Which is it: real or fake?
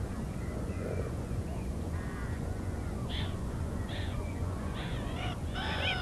fake